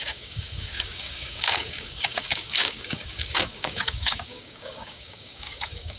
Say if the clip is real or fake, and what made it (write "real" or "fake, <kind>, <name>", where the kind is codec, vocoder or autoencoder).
fake, codec, DAC